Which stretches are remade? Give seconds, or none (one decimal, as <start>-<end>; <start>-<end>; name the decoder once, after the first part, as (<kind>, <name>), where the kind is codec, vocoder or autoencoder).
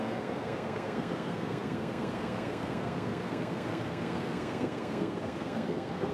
0.0-6.1 (codec, SNAC)